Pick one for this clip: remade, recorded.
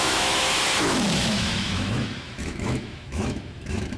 remade